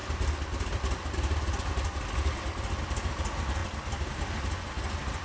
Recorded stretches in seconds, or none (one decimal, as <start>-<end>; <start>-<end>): 0.0-5.2